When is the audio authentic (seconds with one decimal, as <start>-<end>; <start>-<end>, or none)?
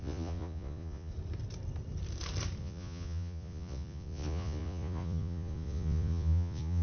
1.1-2.6